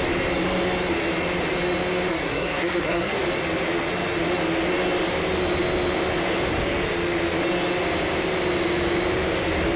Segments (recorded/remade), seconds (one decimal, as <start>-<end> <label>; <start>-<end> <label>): 0.0-2.1 recorded; 2.1-3.2 remade; 3.2-9.8 recorded